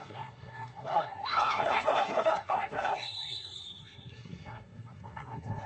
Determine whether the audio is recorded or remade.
remade